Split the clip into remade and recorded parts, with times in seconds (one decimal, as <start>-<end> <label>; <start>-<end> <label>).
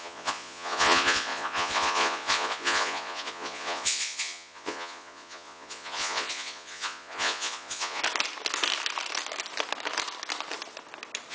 0.0-8.0 remade; 8.0-11.3 recorded